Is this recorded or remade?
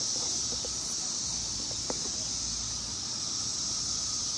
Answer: recorded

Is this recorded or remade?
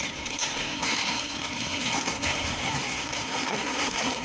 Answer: remade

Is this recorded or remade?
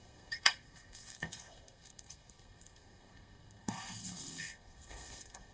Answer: remade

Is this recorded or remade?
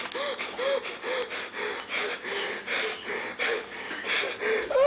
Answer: recorded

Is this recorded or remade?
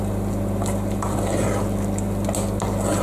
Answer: recorded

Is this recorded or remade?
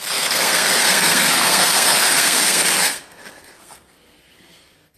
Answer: remade